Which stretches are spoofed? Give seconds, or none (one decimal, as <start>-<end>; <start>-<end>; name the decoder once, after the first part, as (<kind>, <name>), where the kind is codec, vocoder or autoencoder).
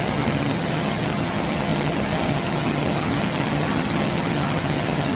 0.0-5.2 (vocoder, HiFi-GAN)